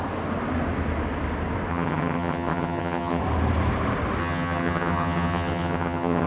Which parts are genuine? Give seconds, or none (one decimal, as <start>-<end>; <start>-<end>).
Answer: 0.0-1.7; 3.2-4.2